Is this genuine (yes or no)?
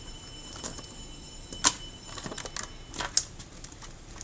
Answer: yes